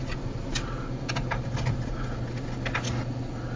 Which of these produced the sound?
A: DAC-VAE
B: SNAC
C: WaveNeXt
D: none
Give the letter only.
D